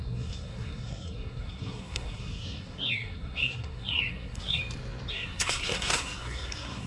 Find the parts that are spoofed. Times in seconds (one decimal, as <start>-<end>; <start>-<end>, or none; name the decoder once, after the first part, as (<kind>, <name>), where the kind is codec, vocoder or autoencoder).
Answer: 0.0-4.6 (codec, SNAC); 5.1-6.9